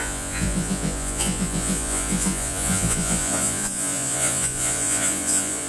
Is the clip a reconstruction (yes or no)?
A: yes